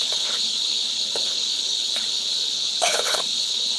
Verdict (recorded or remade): remade